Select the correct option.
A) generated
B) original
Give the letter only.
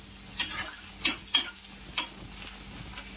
B